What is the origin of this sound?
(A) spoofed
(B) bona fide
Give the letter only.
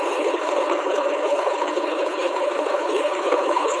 A